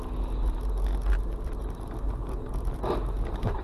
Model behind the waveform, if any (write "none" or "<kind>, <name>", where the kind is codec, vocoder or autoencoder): none